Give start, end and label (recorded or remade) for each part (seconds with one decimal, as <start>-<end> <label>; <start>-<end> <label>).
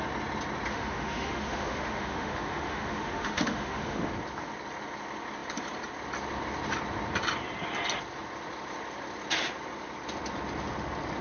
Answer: 0.0-0.7 recorded; 0.7-4.1 remade; 4.1-11.2 recorded